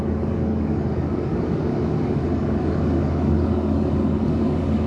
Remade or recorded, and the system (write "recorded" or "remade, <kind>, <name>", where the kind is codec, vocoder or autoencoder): remade, codec, DAC